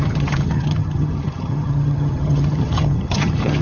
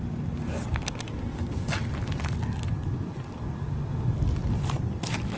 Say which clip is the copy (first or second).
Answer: first